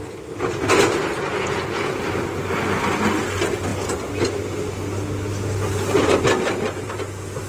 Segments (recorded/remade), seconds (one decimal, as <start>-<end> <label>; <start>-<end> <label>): 0.0-1.1 recorded; 1.1-2.0 remade; 2.0-7.5 recorded